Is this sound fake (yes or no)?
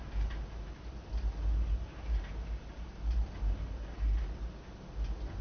no